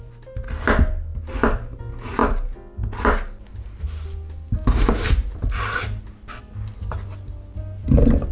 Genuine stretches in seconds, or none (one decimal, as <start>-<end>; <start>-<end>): 0.0-8.3